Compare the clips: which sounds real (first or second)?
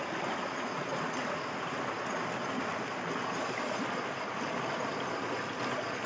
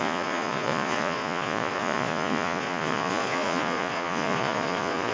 first